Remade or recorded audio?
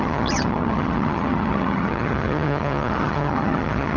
remade